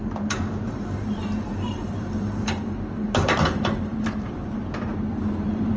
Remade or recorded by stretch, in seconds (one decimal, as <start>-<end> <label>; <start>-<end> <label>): 0.0-5.8 remade